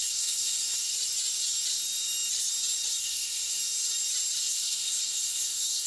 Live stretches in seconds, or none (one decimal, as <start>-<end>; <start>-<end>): 0.9-3.0; 3.6-4.4